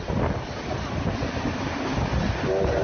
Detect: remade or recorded recorded